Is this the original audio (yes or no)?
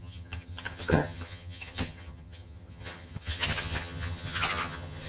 no